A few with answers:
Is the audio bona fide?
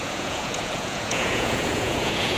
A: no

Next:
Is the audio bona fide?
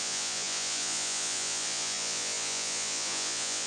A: no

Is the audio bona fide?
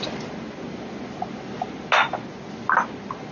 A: yes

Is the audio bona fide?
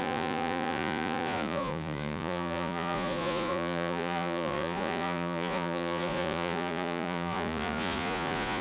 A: no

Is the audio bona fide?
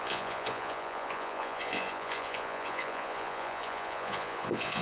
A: no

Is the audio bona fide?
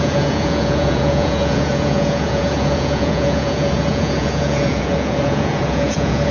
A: no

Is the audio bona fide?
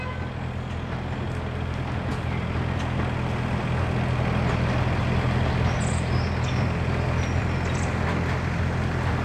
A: yes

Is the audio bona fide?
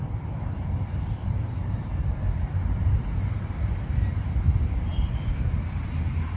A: yes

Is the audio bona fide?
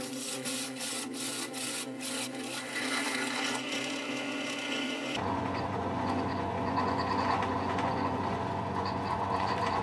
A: no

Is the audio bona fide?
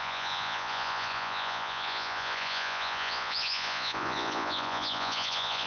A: no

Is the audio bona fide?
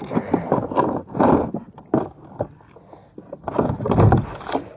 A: yes